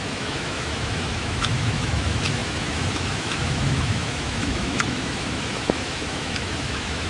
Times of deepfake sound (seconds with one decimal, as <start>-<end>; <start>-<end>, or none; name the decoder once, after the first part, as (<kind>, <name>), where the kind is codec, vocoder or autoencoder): 0.0-7.1 (autoencoder, DAC-VAE)